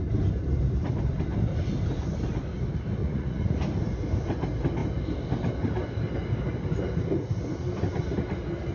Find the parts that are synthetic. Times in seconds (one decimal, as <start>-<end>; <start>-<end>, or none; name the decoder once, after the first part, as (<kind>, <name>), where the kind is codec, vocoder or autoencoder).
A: 3.0-3.6 (vocoder, Vocos)